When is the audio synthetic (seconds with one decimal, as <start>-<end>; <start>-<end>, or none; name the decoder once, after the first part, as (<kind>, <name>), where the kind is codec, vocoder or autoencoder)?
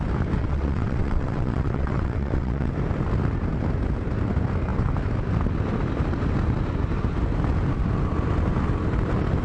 0.4-2.7 (vocoder, WaveNeXt)